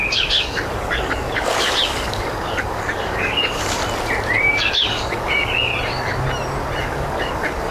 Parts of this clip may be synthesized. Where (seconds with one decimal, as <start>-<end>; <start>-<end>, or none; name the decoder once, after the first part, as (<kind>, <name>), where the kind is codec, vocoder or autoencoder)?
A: 0.0-3.8 (codec, DAC); 4.4-5.7; 6.8-7.7